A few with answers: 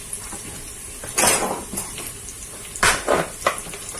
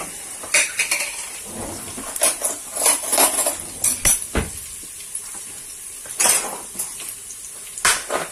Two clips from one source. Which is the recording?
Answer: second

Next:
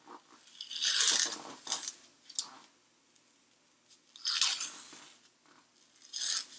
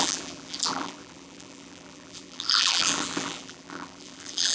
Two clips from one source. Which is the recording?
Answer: first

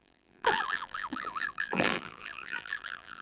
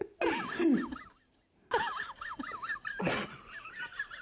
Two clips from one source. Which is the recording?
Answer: second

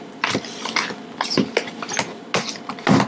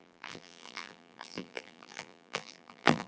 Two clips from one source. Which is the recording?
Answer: first